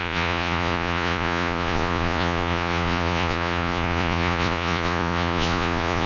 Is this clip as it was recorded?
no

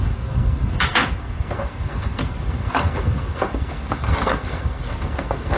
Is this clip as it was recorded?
no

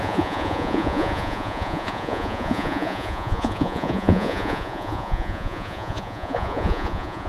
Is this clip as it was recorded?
no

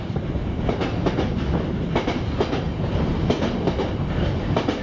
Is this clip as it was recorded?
yes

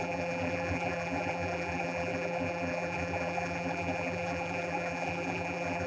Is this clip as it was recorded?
no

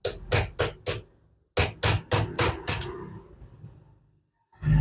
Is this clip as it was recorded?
yes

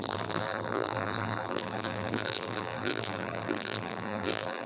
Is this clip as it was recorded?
no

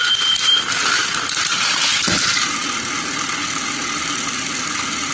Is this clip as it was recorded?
yes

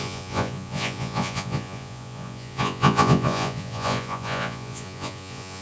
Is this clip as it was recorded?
no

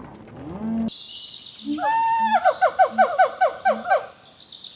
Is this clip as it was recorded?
yes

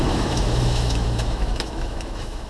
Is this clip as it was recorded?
no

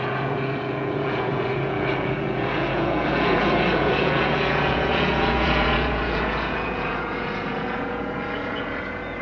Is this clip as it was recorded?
no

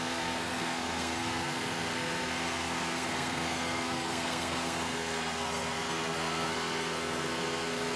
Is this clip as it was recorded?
no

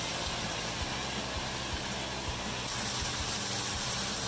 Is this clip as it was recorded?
yes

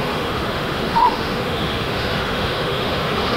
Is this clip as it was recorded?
no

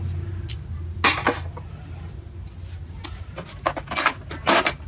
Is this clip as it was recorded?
yes